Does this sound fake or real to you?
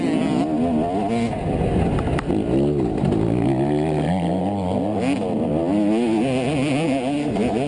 real